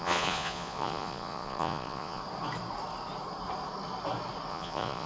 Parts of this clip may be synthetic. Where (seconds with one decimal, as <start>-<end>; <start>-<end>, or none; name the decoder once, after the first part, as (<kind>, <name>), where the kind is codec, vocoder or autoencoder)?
0.0-2.2 (vocoder, Vocos); 4.5-5.1